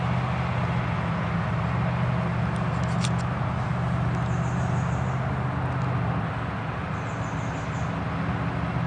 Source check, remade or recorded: recorded